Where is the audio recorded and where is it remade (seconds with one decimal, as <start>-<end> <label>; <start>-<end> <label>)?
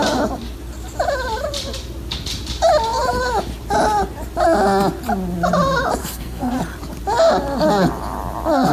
0.0-6.0 recorded; 6.0-6.5 remade; 6.5-8.7 recorded